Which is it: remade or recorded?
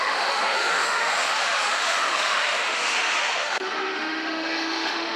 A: remade